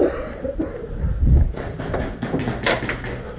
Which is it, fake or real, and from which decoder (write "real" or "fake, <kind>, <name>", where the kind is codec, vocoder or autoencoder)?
real